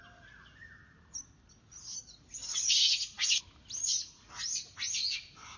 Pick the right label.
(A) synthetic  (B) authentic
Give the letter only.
B